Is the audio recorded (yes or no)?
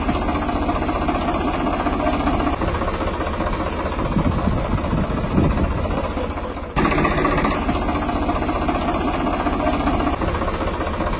yes